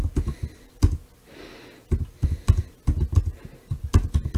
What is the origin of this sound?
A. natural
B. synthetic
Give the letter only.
A